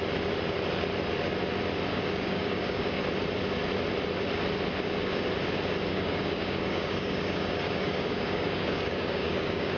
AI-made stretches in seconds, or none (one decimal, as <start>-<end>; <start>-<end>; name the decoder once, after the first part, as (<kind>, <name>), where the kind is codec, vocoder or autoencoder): 1.9-3.0 (codec, DAC); 5.9-9.8